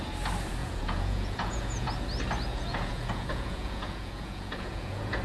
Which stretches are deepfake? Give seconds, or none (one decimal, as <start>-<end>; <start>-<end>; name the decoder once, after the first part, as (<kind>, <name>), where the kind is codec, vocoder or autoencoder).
0.6-1.9 (vocoder, Vocos); 2.5-5.2